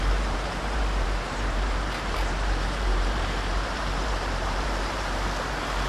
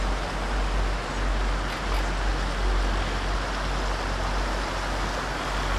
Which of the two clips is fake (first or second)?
first